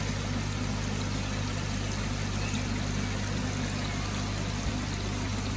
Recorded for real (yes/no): yes